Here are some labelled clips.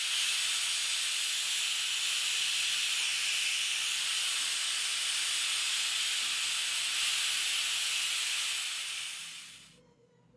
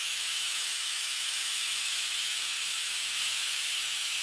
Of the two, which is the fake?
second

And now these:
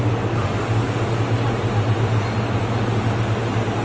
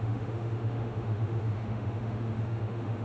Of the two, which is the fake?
second